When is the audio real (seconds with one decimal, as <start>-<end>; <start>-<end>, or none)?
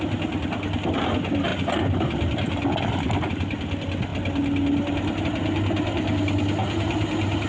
0.0-7.5